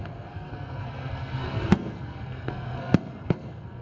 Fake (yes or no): yes